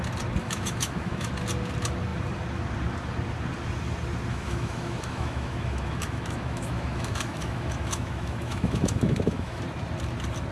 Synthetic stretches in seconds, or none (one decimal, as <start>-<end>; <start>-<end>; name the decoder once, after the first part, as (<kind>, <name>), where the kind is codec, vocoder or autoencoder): 0.4-1.3 (autoencoder, DAC-VAE); 4.3-9.6